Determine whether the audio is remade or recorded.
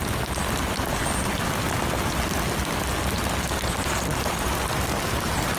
recorded